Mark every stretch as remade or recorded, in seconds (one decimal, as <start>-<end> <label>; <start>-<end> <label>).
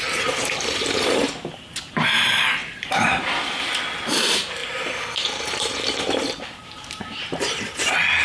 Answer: 0.0-2.6 recorded; 2.6-3.2 remade; 3.2-4.6 recorded; 4.6-7.6 remade; 7.6-8.2 recorded